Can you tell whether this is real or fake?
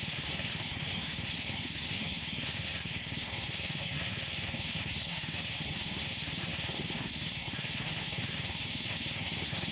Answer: fake